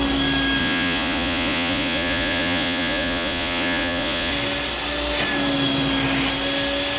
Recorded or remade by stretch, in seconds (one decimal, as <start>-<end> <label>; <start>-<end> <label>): 0.0-0.6 recorded; 0.6-4.3 remade; 4.3-7.0 recorded